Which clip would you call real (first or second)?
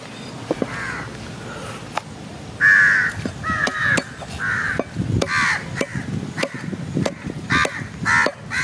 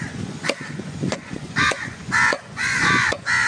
first